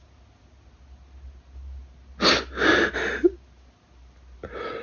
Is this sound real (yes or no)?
yes